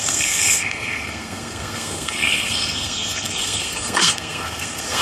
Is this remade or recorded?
remade